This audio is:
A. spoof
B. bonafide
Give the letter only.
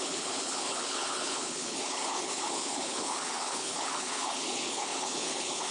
A